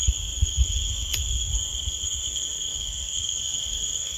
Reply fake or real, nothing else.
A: fake